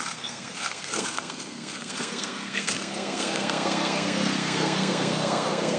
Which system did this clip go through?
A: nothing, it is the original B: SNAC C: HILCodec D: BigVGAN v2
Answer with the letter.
B